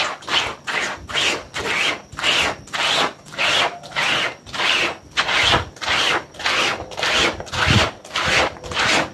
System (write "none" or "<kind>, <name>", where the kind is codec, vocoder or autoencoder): none